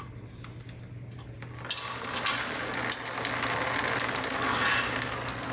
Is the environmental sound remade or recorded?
recorded